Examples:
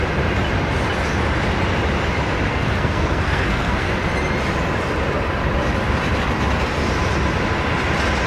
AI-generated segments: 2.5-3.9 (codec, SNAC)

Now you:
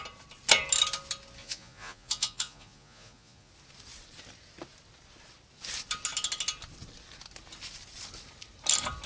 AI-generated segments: 1.4-3.5 (vocoder, Vocos)

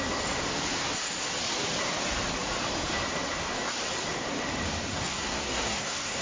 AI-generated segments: 4.9-6.2 (codec, SNAC)